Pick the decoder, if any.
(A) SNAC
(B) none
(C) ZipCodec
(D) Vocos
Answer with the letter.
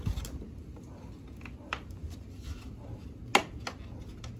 B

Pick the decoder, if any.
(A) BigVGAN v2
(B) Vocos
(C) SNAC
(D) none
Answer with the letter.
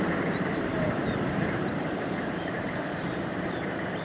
A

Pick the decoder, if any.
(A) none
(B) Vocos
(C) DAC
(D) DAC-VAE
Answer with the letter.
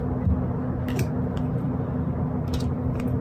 A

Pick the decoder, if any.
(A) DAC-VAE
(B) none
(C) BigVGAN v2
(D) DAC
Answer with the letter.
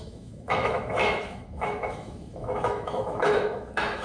A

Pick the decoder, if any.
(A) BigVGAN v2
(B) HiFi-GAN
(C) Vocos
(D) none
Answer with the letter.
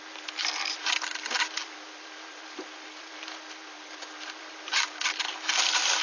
A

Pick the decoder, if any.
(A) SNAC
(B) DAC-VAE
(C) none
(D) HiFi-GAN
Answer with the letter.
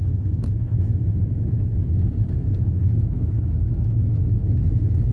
B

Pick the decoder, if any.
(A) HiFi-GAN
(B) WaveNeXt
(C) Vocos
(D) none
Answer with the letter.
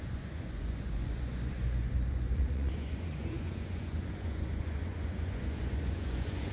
C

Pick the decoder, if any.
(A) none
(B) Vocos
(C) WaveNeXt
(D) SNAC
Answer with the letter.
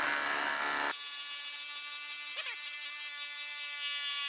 A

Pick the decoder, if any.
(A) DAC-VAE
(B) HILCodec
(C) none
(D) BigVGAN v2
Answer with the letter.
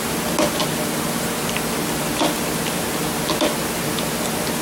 C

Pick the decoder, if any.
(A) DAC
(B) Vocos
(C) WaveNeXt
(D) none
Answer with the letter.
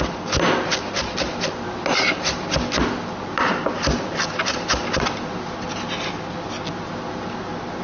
D